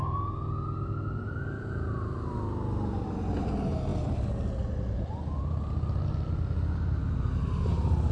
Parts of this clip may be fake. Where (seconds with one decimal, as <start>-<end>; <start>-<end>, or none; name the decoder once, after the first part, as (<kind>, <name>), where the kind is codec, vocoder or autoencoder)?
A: none